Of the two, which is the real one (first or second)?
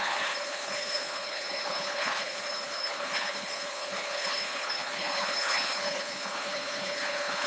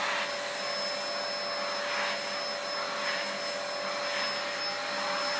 second